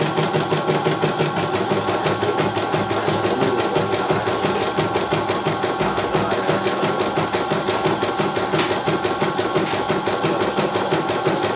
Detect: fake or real real